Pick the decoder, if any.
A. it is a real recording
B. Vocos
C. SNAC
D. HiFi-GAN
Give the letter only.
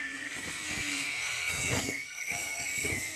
C